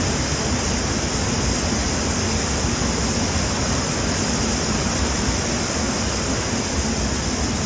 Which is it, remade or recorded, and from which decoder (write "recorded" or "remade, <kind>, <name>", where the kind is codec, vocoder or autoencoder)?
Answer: recorded